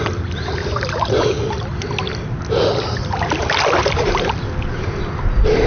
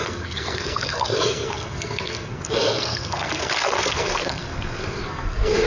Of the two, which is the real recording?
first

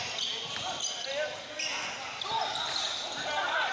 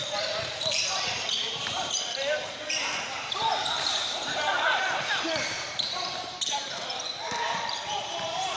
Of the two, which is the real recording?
first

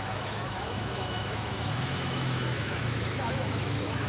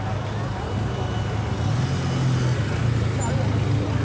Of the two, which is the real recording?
second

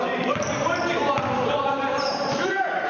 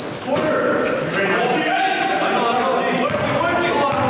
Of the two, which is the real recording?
second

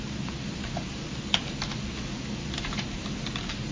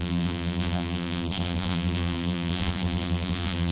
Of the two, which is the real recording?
first